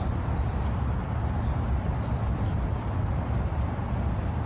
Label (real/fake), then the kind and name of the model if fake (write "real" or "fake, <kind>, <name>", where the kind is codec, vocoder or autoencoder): real